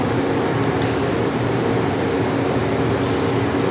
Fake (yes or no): no